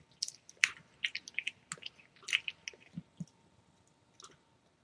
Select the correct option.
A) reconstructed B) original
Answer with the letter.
B